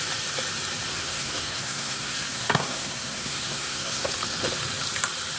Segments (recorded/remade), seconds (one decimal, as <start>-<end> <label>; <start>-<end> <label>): 0.0-0.9 recorded; 0.9-4.1 remade; 4.1-5.4 recorded